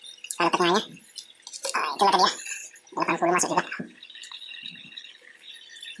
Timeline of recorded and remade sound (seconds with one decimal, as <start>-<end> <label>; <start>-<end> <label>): 0.0-3.1 recorded; 3.1-5.5 remade; 5.5-6.0 recorded